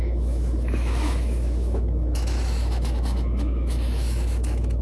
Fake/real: fake